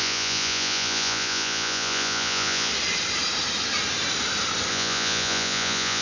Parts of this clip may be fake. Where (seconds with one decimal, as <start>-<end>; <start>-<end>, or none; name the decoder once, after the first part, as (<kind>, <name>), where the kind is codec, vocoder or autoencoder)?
0.0-2.7 (vocoder, Vocos); 4.7-6.0